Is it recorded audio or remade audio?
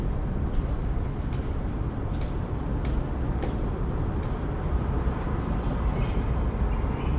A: recorded